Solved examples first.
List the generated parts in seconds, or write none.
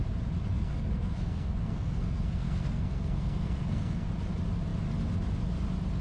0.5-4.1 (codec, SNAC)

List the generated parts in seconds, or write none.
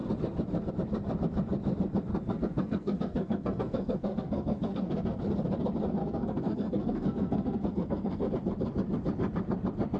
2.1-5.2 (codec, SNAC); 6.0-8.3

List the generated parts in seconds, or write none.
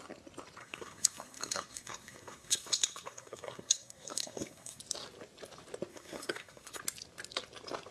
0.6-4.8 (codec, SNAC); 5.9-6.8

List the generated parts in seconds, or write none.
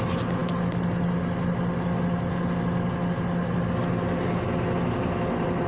none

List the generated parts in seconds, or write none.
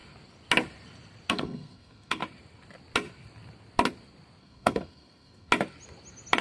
1.3-2.2 (codec, SNAC); 4.4-5.5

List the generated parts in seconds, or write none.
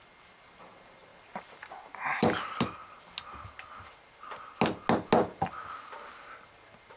none